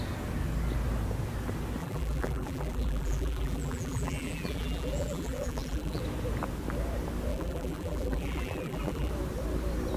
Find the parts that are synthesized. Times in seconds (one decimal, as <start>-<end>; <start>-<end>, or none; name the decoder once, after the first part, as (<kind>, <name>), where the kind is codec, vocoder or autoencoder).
1.8-6.0 (vocoder, BigVGAN v2); 7.3-9.1